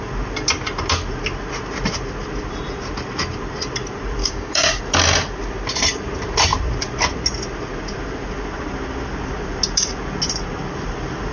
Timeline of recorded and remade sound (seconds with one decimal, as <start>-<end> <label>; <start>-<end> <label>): 0.0-4.2 recorded; 4.2-4.8 remade; 4.8-11.3 recorded